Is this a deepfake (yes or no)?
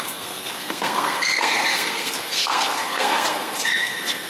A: yes